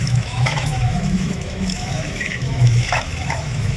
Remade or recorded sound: remade